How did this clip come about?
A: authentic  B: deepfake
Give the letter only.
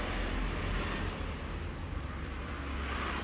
A